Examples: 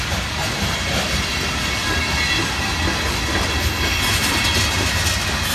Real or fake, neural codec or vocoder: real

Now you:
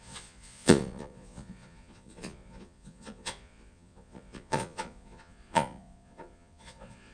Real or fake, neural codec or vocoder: fake, vocoder, Vocos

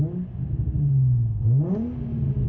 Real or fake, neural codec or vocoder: real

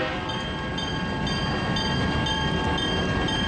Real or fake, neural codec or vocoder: real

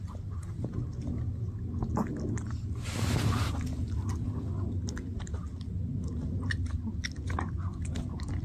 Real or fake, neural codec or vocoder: real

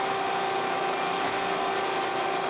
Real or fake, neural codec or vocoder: real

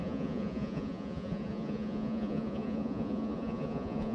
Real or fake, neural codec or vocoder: fake, vocoder, Vocos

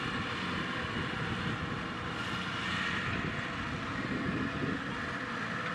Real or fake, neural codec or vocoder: fake, vocoder, BigVGAN v2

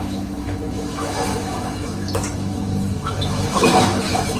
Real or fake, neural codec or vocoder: fake, autoencoder, DAC-VAE